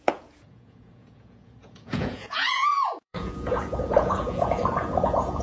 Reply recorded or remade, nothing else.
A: remade